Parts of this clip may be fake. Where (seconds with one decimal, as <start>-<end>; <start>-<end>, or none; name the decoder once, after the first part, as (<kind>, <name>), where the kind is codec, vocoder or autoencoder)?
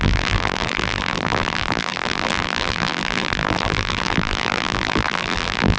0.0-5.8 (vocoder, BigVGAN v2)